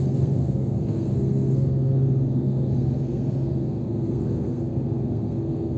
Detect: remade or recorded remade